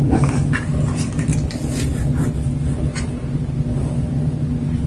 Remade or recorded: recorded